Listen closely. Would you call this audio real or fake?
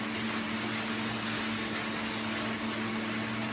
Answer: real